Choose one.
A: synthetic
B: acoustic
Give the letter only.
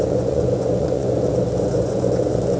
A